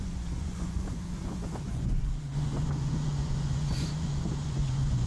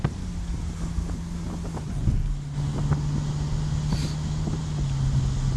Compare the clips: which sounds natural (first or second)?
second